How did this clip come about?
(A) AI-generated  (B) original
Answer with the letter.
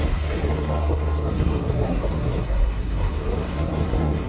A